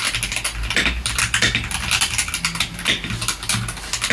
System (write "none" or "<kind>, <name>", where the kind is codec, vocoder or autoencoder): none